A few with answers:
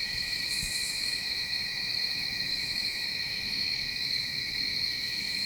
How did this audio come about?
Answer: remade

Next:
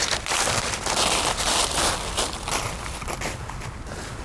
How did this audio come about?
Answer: recorded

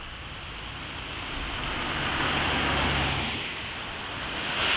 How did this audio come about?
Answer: recorded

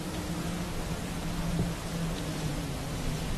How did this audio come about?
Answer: remade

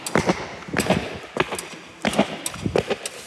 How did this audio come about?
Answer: recorded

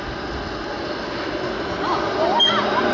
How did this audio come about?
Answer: recorded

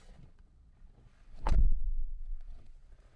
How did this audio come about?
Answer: remade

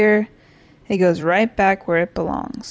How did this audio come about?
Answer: remade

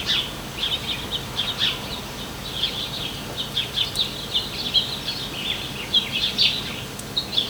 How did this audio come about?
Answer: recorded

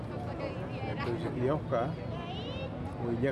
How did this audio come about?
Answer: recorded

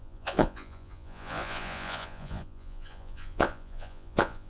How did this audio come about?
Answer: remade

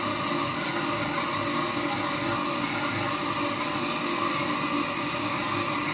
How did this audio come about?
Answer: recorded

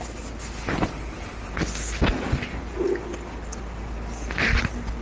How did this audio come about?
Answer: recorded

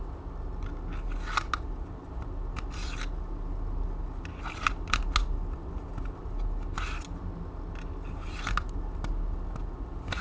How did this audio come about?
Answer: recorded